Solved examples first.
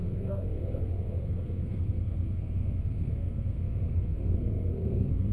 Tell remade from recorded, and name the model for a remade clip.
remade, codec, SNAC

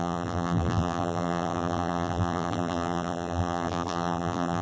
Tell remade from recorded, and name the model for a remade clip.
remade, vocoder, BigVGAN v2